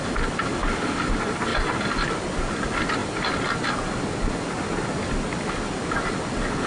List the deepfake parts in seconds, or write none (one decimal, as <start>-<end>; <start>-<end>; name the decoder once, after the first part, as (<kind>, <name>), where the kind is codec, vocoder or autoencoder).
none